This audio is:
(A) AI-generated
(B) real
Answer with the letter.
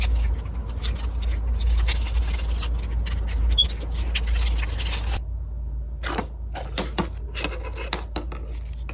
B